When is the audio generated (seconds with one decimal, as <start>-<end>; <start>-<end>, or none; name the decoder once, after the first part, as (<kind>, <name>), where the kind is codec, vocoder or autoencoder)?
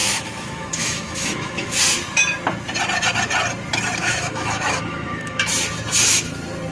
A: 0.0-1.8 (autoencoder, DAC-VAE); 4.0-5.5